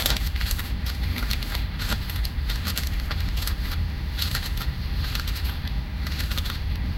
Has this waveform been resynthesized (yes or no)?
yes